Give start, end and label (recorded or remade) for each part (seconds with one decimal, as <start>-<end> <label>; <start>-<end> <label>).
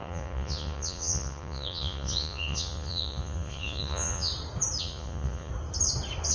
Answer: 0.0-4.3 remade; 4.3-4.8 recorded; 4.8-5.5 remade; 5.5-6.3 recorded